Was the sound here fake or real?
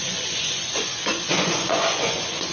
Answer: fake